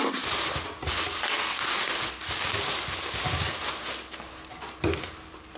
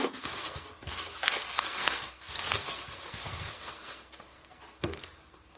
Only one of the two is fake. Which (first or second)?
second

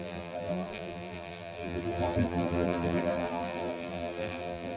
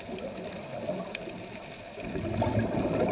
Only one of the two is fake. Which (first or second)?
first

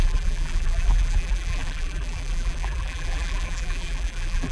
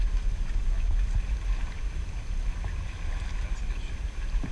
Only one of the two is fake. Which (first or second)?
first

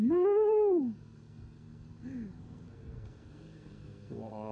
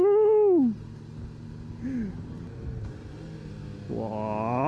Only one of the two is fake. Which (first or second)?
first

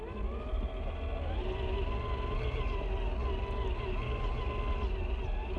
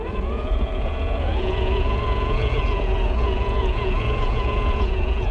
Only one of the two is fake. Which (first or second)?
second